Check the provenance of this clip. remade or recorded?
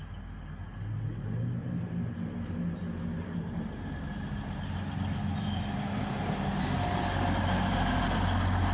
recorded